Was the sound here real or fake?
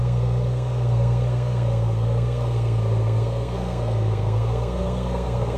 fake